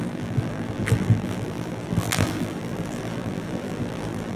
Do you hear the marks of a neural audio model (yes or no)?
yes